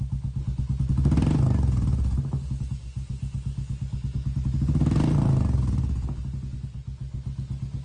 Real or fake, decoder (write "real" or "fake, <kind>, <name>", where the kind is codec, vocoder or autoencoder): real